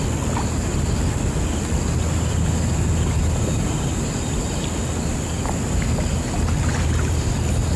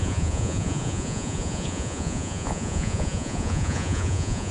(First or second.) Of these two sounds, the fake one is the second